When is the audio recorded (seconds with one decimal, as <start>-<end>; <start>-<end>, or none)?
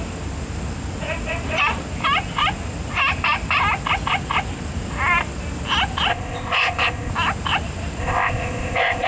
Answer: 0.0-6.1; 7.1-8.0